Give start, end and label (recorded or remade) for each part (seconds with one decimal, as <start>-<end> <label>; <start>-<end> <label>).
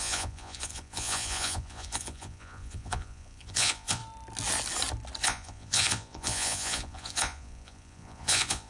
0.0-4.0 remade; 4.0-5.2 recorded; 5.2-8.7 remade